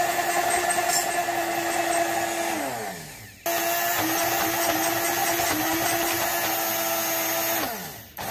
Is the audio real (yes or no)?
yes